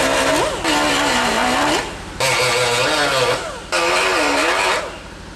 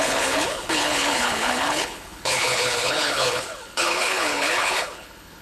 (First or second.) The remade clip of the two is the second